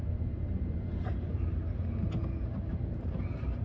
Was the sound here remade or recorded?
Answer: remade